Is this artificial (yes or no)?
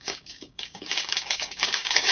yes